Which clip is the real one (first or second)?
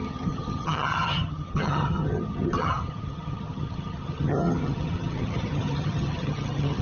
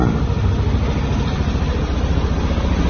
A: second